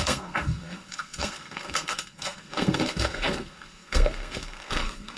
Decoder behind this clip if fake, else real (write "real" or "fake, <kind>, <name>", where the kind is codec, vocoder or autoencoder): fake, codec, SNAC